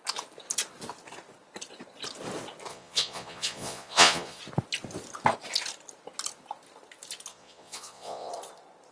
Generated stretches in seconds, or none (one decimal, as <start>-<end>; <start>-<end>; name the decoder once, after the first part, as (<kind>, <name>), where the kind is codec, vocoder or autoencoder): 2.7-4.4 (vocoder, Vocos); 7.3-8.3